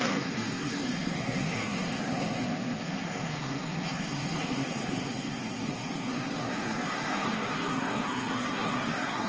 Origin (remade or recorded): remade